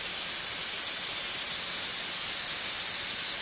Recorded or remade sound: recorded